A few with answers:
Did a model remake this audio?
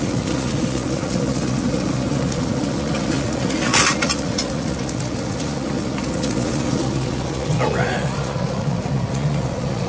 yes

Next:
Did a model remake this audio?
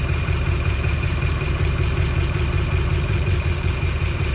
yes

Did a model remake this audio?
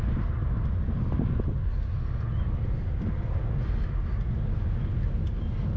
no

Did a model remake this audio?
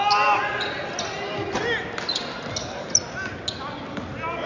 no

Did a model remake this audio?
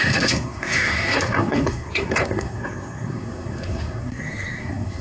yes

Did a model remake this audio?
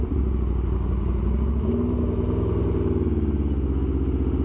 no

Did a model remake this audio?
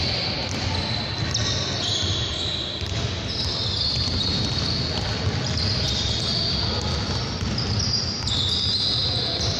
no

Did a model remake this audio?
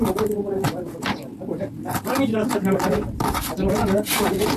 no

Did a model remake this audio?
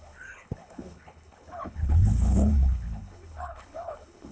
yes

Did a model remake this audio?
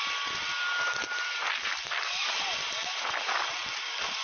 yes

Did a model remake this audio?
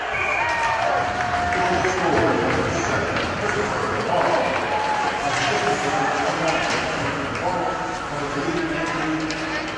no